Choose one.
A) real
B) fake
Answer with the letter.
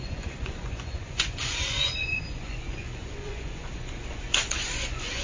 B